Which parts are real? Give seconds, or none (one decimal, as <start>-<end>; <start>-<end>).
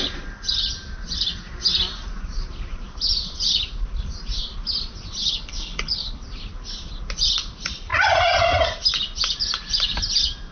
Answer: 0.0-5.2; 6.2-10.5